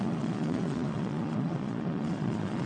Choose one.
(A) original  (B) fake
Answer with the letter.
B